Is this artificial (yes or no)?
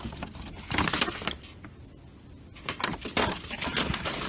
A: no